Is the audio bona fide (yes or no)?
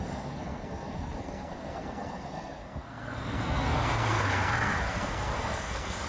no